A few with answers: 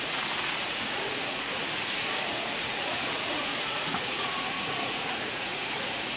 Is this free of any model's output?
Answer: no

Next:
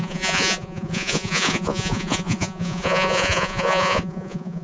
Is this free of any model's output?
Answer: no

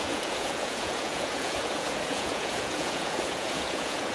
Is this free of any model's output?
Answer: no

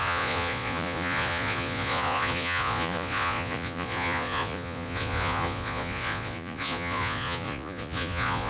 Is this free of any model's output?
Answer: no